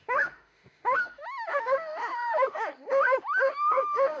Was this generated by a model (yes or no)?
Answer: yes